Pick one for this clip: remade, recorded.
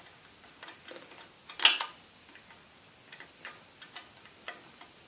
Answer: recorded